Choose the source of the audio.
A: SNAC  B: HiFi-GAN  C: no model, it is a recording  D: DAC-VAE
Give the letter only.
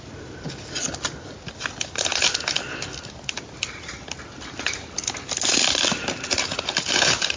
C